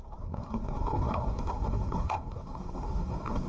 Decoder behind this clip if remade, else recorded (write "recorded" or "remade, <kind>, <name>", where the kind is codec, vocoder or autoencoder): remade, codec, SNAC